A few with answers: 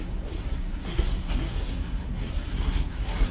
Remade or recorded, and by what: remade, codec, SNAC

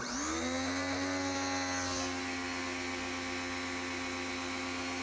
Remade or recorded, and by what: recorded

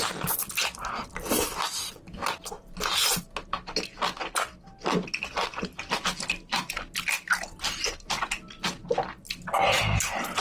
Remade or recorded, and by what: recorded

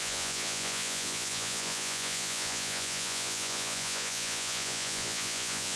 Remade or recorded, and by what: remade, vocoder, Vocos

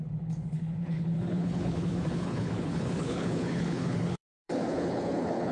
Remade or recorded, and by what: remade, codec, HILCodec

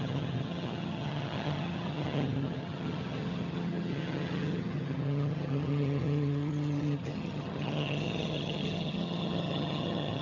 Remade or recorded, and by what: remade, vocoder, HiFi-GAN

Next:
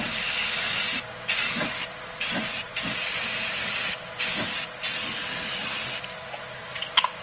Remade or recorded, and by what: recorded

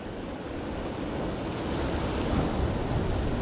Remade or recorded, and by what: recorded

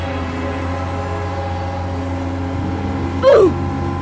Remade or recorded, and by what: recorded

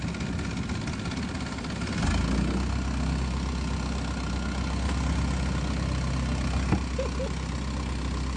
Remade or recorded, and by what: recorded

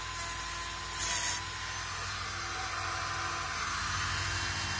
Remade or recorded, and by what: recorded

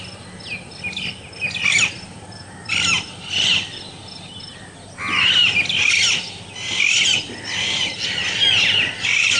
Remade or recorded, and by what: recorded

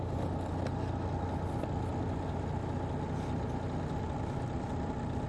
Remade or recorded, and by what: recorded